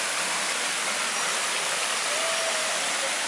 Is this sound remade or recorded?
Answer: recorded